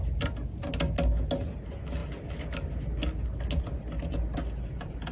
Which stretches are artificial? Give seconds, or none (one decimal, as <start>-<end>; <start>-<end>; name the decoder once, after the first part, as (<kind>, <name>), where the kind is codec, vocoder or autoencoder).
none